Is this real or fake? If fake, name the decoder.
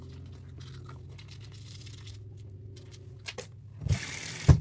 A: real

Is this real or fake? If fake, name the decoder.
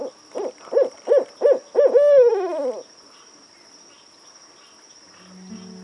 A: real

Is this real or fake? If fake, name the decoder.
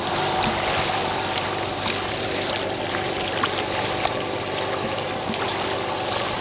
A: real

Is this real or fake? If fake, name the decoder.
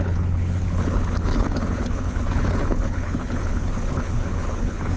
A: fake, codec, HILCodec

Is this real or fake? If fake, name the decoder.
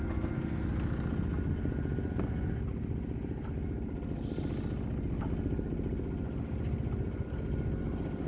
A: real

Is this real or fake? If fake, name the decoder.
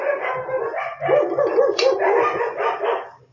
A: real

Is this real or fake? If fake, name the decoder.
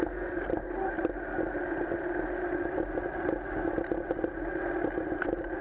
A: real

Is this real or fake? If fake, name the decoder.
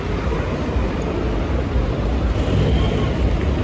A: real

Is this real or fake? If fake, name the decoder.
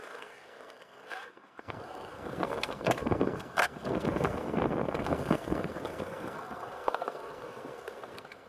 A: fake, codec, SNAC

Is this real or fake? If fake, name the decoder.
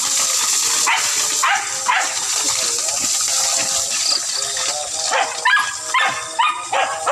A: real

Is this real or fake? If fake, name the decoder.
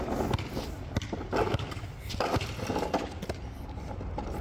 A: real